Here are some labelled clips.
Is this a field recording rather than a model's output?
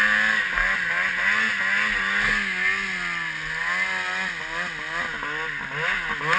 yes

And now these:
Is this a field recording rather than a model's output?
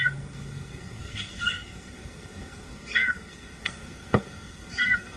no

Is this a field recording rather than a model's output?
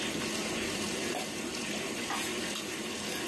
no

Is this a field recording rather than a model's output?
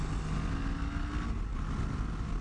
yes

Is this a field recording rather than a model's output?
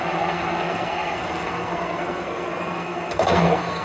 no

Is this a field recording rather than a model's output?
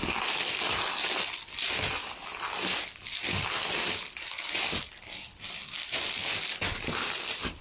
yes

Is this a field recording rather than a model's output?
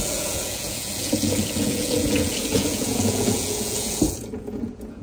no